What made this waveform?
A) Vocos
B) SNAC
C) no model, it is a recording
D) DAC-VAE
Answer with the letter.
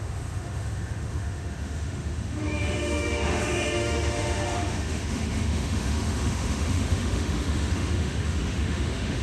D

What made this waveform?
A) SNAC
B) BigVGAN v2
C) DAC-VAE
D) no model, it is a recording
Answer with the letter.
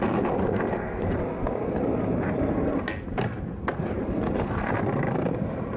D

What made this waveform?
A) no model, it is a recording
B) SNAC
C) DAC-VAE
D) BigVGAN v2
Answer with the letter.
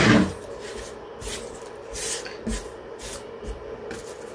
A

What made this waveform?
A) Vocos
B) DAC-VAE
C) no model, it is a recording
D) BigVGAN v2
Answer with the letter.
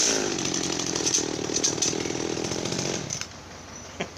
C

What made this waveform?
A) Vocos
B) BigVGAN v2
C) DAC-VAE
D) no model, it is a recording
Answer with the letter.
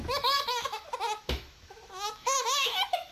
C